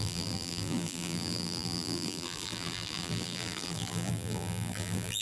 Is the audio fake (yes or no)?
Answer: yes